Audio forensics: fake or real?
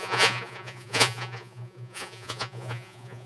fake